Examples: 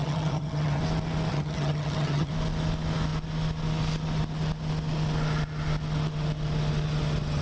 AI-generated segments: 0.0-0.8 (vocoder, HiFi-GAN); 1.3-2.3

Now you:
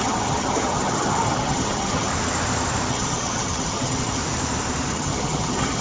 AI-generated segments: 0.0-2.1 (vocoder, HiFi-GAN); 2.9-4.2; 4.9-5.8